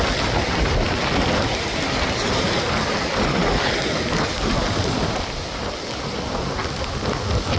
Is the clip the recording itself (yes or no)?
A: yes